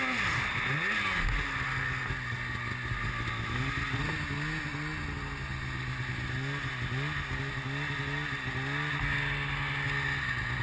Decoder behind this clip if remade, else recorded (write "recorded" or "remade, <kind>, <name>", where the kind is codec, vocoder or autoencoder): recorded